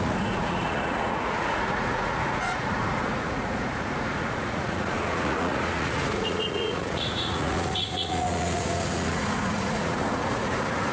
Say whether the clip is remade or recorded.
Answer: remade